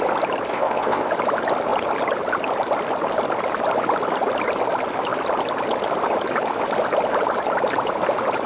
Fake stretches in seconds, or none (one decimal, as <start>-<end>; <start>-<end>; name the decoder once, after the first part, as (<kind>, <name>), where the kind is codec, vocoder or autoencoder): 0.5-1.1 (codec, ZipCodec)